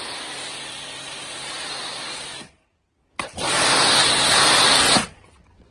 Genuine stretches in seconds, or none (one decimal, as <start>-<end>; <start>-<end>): 0.0-5.0